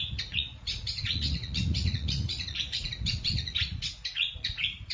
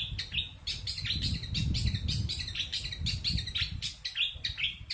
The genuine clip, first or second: second